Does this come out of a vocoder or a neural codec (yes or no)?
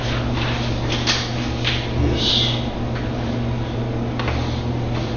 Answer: no